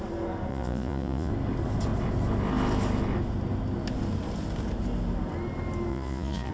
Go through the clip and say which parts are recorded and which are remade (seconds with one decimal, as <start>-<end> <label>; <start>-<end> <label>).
0.0-0.5 recorded; 0.5-1.3 remade; 1.3-5.9 recorded; 5.9-6.5 remade